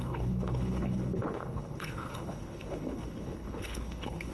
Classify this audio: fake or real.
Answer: fake